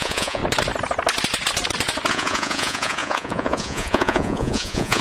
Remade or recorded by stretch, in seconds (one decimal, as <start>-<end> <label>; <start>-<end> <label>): 0.0-0.4 remade; 0.4-2.1 recorded; 2.1-5.0 remade